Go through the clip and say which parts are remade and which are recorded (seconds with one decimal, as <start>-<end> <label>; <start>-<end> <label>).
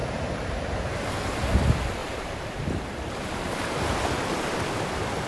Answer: 0.0-0.9 remade; 0.9-2.0 recorded; 2.0-3.8 remade; 3.8-5.3 recorded